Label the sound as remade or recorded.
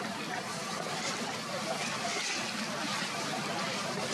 remade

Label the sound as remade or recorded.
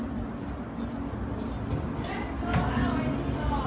recorded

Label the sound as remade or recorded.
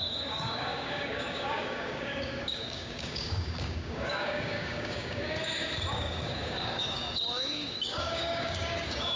remade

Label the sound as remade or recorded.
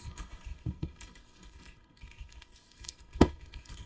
remade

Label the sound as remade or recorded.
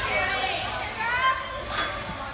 recorded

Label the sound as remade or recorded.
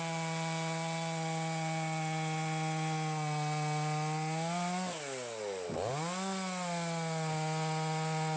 recorded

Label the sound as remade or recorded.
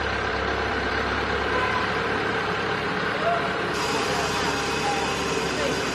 remade